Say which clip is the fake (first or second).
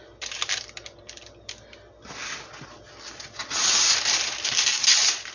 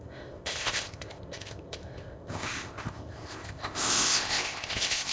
second